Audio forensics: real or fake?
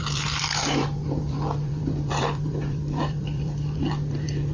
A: fake